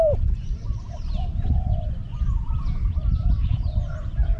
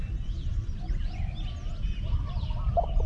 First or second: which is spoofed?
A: first